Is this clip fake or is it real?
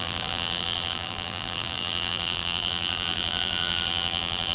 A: fake